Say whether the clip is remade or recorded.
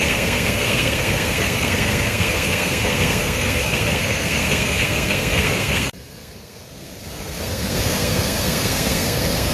remade